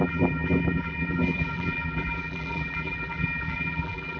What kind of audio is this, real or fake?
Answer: fake